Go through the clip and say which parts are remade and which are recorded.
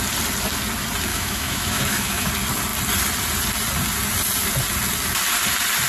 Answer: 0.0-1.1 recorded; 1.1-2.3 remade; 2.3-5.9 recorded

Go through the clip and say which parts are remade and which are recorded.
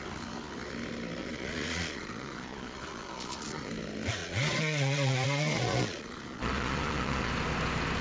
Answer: 0.0-1.2 recorded; 1.2-3.7 remade; 3.7-4.2 recorded; 4.2-7.3 remade; 7.3-8.0 recorded